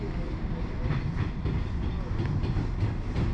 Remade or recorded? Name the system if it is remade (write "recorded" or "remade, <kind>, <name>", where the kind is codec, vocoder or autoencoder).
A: recorded